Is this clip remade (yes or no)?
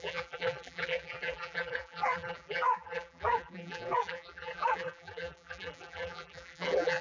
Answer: yes